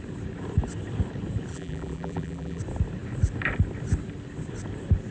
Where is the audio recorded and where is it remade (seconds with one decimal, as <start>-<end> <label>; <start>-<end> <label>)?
0.0-1.5 recorded; 1.5-2.6 remade; 2.6-5.1 recorded